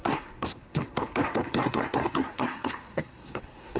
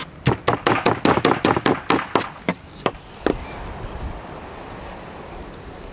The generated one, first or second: first